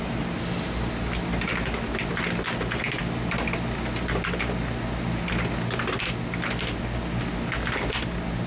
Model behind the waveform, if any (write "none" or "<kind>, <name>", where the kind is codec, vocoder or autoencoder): none